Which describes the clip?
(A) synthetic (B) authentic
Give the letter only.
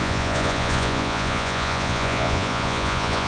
A